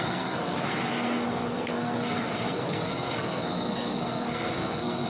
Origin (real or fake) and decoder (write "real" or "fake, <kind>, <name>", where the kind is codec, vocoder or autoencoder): fake, codec, SNAC